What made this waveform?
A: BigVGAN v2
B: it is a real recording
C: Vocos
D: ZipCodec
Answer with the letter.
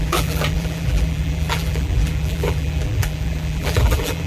A